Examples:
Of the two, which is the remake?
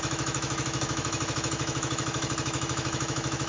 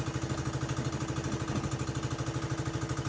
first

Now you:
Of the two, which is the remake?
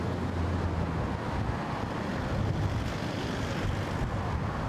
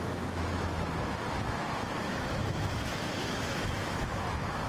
second